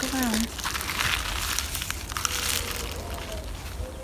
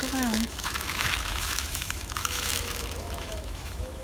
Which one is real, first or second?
first